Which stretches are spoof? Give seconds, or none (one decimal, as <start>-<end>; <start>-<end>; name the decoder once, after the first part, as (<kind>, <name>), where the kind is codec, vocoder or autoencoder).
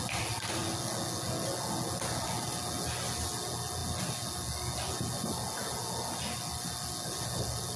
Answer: none